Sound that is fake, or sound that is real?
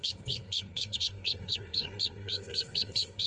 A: fake